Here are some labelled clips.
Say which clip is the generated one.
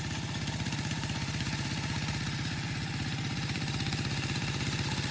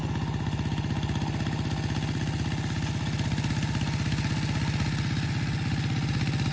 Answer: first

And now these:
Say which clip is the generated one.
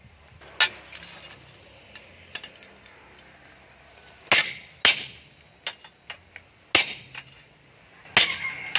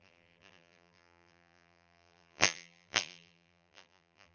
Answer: second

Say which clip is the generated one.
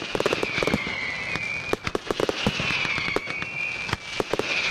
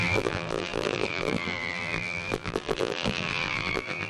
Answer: second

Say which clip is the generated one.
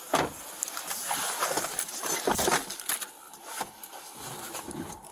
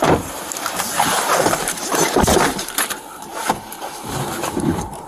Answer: second